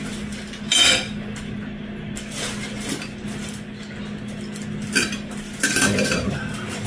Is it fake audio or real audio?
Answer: real